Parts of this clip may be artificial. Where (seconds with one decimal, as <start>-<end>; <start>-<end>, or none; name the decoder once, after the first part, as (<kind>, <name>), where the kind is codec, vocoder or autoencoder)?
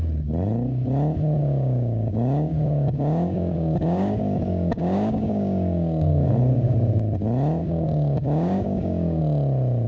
1.4-6.3 (codec, DAC); 7.6-9.2